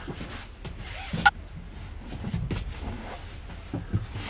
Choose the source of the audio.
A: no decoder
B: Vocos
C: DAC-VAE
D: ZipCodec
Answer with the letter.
A